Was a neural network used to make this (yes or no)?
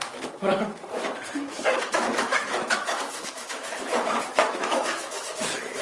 yes